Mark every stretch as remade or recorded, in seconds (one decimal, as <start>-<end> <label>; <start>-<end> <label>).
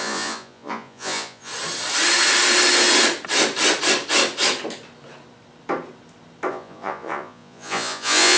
0.0-1.5 remade; 1.5-6.5 recorded; 6.5-8.4 remade